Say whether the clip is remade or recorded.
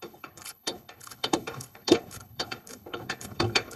remade